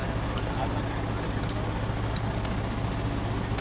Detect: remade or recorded recorded